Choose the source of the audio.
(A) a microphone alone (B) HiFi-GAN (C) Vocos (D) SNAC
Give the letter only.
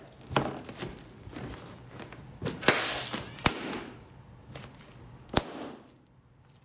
A